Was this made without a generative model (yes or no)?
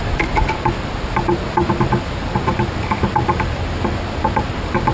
yes